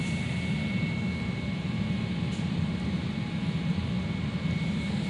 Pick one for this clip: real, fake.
real